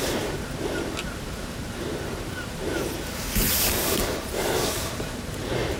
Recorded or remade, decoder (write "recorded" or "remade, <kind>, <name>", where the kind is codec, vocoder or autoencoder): remade, vocoder, BigVGAN v2